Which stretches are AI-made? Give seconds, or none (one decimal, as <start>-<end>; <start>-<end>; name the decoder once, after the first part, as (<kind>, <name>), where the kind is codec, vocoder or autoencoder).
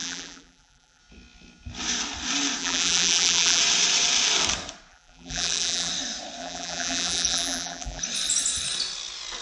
0.0-1.0 (vocoder, BigVGAN v2); 2.6-3.6; 4.9-5.9; 6.4-8.0